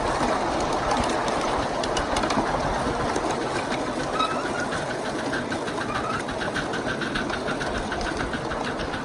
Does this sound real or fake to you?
real